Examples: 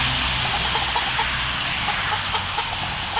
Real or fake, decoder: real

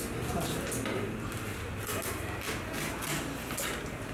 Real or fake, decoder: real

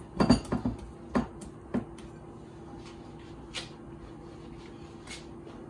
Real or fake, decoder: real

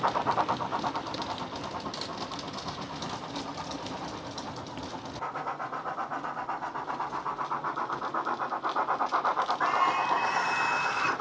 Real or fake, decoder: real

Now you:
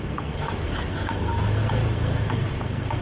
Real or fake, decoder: fake, codec, SNAC